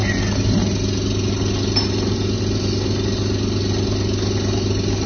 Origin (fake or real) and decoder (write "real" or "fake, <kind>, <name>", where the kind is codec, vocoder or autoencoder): real